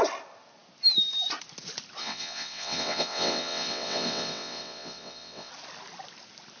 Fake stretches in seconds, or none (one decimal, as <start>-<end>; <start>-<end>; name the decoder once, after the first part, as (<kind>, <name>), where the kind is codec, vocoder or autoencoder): 2.0-5.5 (vocoder, WaveNeXt)